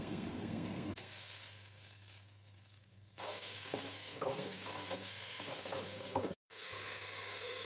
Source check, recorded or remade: remade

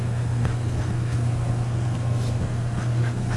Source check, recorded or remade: remade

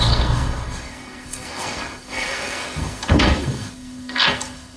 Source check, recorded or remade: remade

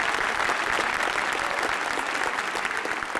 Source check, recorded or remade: recorded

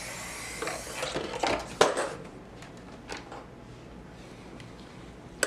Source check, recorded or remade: recorded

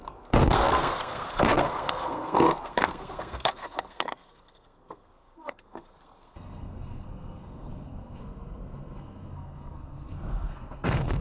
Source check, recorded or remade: remade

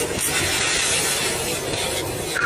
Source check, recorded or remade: recorded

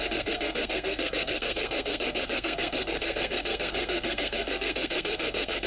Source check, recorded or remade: remade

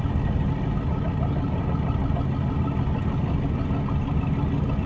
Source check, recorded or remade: recorded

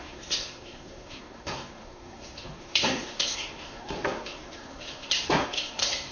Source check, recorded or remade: remade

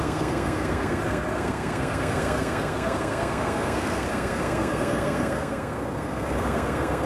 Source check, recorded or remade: remade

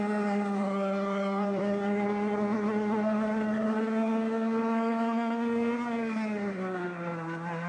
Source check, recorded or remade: remade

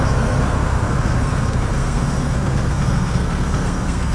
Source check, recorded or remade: remade